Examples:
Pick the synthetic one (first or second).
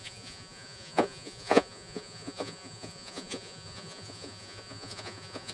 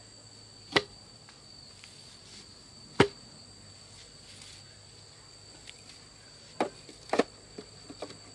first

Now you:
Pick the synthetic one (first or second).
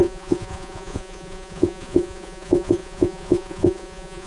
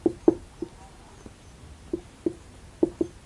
first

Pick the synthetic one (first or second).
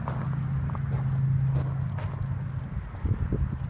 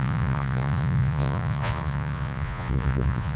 second